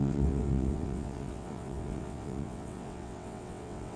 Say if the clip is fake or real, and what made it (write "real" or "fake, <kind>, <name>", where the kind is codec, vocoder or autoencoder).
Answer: fake, vocoder, WaveNeXt